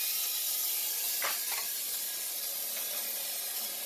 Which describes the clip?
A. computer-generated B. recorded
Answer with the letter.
B